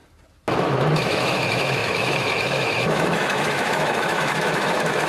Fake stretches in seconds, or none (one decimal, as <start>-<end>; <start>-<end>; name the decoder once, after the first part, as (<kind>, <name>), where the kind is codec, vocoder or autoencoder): 0.5-5.1 (autoencoder, DAC-VAE)